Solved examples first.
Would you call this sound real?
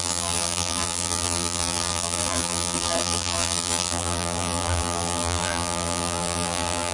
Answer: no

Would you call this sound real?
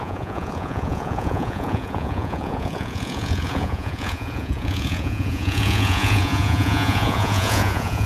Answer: no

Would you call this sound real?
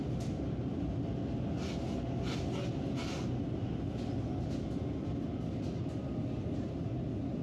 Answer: yes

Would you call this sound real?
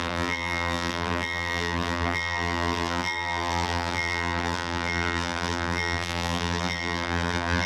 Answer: no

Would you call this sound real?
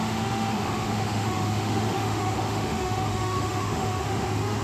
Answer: no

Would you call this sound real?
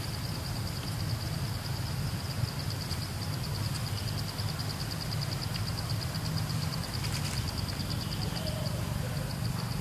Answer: yes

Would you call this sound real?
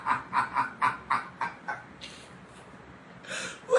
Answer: yes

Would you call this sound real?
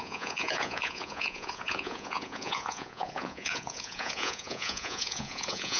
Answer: no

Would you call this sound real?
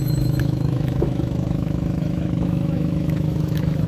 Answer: no